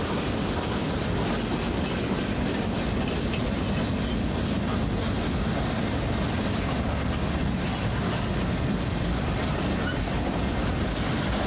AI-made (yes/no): no